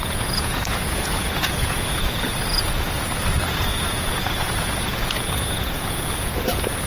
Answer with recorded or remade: remade